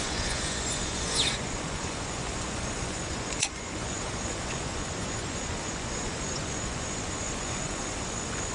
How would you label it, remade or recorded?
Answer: remade